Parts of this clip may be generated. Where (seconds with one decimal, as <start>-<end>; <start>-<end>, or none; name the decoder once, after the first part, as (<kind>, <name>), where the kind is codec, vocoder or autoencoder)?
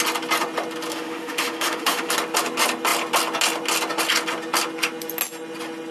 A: 0.9-2.1 (autoencoder, DAC-VAE)